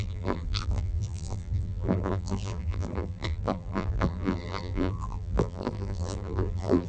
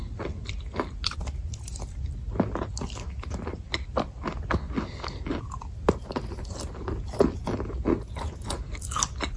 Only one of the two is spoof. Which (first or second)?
first